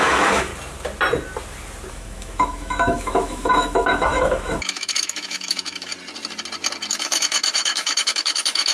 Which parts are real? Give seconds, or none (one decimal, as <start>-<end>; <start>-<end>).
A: 0.5-1.9; 5.9-6.9

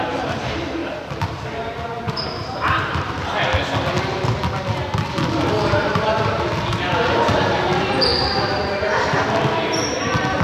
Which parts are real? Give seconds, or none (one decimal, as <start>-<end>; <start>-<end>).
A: 0.0-0.8; 3.1-5.8; 6.5-10.4